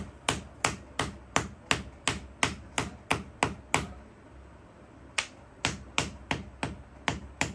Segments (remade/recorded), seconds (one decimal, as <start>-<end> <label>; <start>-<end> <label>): 0.0-7.5 recorded